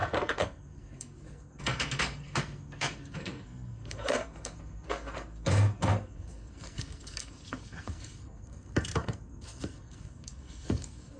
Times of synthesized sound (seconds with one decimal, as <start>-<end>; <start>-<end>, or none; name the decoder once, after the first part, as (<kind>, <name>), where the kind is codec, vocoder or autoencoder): 0.0-11.2 (codec, SNAC)